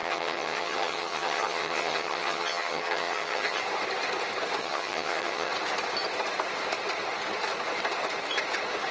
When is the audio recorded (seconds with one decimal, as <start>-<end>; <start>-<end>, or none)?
3.6-4.6; 5.5-8.9